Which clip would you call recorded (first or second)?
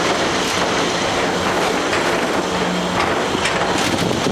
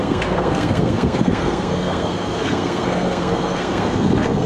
first